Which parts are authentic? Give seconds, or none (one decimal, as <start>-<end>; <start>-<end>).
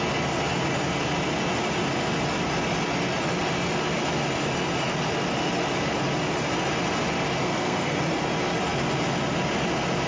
0.0-7.4; 8.0-10.1